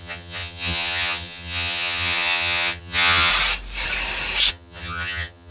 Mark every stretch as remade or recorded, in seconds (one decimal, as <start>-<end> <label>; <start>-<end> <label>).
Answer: 0.0-3.3 remade; 3.3-4.5 recorded; 4.5-5.5 remade